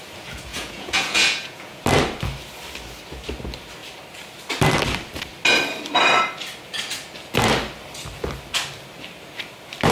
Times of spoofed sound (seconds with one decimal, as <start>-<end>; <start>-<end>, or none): 0.5-1.8